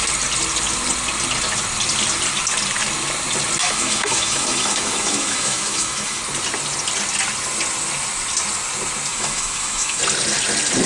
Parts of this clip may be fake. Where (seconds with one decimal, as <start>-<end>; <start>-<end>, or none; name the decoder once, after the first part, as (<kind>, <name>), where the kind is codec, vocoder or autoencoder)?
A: 3.6-6.2 (autoencoder, DAC-VAE); 9.1-10.0